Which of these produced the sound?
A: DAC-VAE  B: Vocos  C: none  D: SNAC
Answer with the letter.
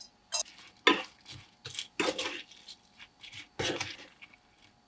C